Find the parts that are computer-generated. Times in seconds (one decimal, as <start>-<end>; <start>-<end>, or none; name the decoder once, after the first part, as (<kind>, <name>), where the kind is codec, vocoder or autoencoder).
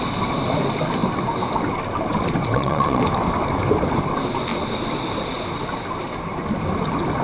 2.4-3.0 (vocoder, Vocos)